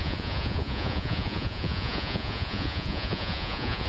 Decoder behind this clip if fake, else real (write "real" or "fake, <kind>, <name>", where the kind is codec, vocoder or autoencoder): fake, vocoder, Vocos